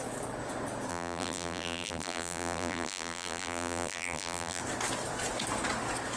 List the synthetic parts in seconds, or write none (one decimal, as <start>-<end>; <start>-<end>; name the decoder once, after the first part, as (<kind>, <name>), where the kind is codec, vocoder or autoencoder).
0.9-4.6 (vocoder, BigVGAN v2)